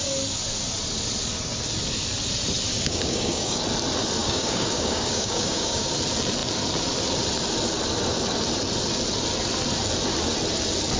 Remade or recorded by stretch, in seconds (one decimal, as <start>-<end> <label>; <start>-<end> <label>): 0.0-2.7 recorded; 2.7-3.6 remade; 3.6-4.2 recorded; 4.2-5.9 remade; 5.9-11.0 recorded